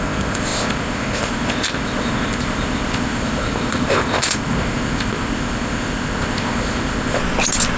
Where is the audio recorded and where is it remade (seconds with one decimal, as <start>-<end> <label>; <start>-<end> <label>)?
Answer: 0.0-7.2 remade; 7.2-7.8 recorded